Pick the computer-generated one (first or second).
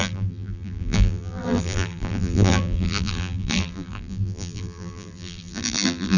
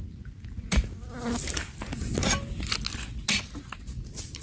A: first